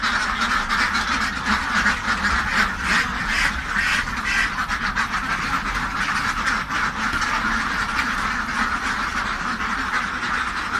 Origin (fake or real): real